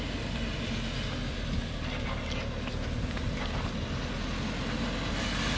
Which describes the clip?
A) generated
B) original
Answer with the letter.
B